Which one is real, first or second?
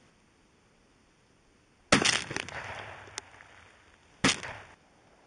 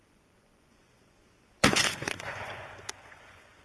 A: first